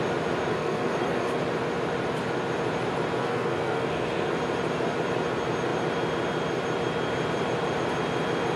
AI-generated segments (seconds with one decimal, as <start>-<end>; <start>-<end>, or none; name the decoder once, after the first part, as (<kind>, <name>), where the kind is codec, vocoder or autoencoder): 0.5-1.4 (codec, SNAC); 3.2-4.3